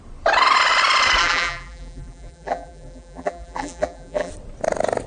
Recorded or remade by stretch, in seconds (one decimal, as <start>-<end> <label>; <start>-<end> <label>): 0.0-1.2 recorded; 1.2-4.3 remade; 4.3-5.1 recorded